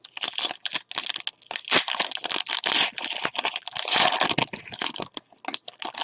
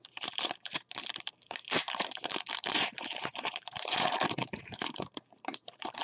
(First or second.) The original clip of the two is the first